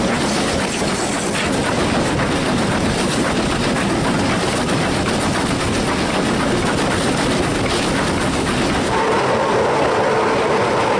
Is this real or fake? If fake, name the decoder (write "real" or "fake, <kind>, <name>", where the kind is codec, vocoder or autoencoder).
real